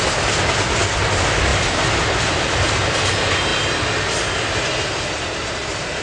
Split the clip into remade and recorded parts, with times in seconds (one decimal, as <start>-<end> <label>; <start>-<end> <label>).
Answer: 0.0-6.0 recorded